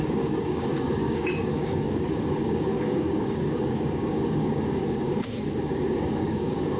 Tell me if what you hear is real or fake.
fake